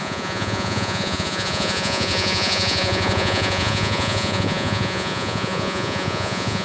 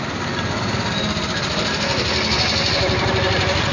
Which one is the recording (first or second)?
second